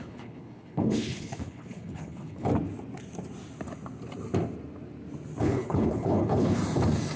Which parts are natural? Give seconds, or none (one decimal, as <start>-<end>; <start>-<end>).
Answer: 2.5-5.4; 6.6-7.2